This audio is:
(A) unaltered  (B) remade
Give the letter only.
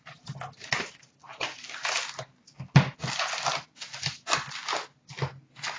A